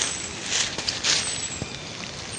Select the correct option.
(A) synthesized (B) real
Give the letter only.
B